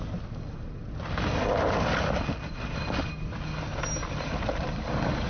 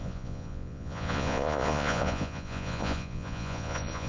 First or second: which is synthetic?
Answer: second